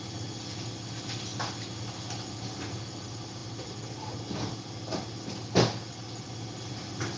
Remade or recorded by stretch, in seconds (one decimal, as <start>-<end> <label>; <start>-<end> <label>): 0.0-7.2 recorded